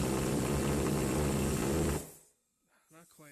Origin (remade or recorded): recorded